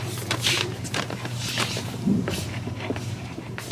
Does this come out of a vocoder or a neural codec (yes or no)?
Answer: yes